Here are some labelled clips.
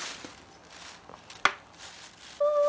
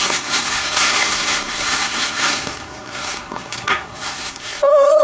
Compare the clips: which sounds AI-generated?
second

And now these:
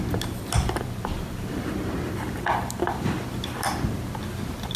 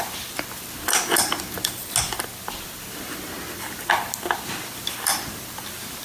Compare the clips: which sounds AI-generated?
first